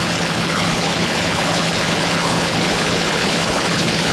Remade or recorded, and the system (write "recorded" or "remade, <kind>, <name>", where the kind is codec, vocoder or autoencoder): remade, codec, HILCodec